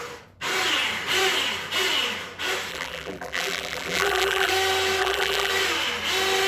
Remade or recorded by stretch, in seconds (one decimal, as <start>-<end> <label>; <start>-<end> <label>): 0.0-2.7 recorded; 2.7-4.5 remade; 4.5-5.0 recorded; 5.0-5.5 remade; 5.5-6.5 recorded